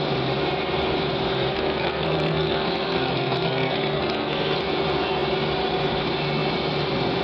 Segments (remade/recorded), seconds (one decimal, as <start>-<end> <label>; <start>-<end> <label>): 0.0-1.5 recorded; 1.5-4.6 remade; 4.6-7.2 recorded